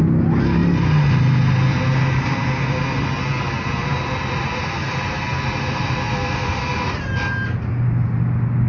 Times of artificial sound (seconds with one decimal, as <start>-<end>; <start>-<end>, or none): none